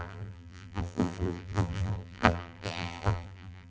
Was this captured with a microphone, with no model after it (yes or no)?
no